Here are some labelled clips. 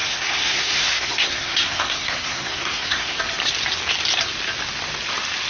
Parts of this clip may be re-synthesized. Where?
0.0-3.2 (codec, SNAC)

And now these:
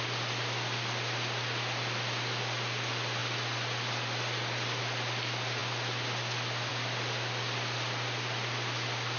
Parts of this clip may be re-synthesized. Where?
none

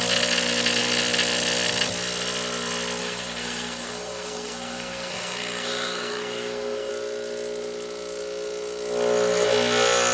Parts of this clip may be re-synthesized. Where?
3.0-6.9 (codec, SNAC)

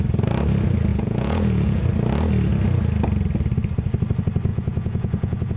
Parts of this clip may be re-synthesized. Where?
0.9-1.8 (vocoder, Vocos); 4.5-5.6

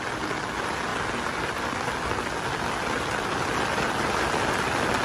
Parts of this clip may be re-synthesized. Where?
none

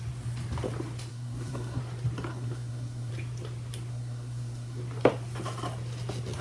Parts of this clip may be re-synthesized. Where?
1.1-1.8 (codec, SNAC); 2.3-3.1; 3.9-4.8

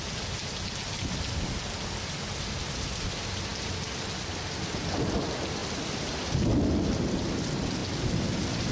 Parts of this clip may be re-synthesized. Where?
5.6-6.4 (vocoder, BigVGAN v2)